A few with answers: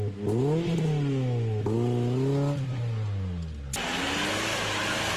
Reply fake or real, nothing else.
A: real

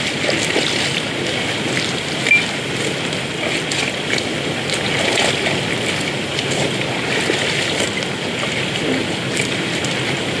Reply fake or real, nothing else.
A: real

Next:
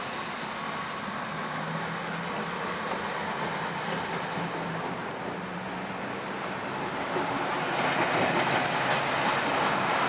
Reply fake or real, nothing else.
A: real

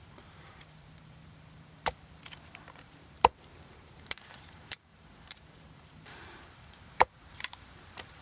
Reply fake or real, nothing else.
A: fake